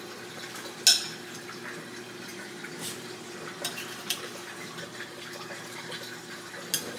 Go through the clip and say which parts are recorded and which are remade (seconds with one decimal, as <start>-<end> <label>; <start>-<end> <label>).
0.0-2.3 recorded; 2.3-6.5 remade; 6.5-7.0 recorded